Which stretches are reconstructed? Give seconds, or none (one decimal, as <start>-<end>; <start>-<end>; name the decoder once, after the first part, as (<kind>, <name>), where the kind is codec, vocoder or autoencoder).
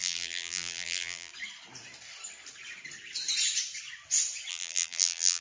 0.0-1.3 (vocoder, BigVGAN v2); 4.5-5.4